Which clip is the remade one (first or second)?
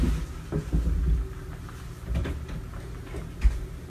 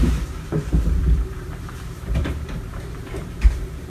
second